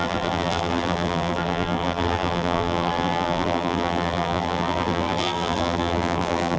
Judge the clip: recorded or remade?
remade